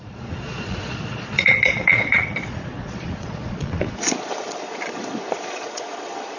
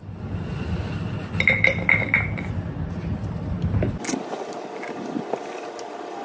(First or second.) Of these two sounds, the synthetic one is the first